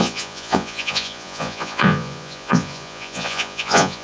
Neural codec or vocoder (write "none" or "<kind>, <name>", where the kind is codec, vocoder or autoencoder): vocoder, Vocos